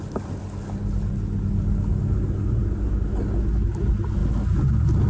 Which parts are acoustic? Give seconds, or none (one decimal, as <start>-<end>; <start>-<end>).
0.0-5.1